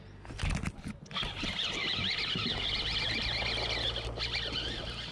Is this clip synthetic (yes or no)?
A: no